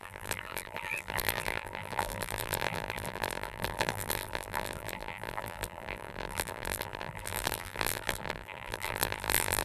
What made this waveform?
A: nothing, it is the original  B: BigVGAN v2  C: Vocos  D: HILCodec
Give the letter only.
B